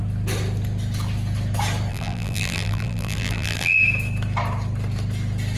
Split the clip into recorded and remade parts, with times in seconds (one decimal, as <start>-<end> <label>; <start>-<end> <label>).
0.0-1.9 recorded; 1.9-3.8 remade; 3.8-5.6 recorded